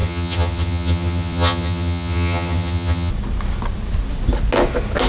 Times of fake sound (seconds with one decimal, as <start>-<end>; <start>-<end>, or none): 0.0-3.1